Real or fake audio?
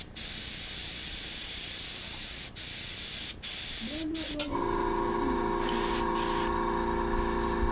real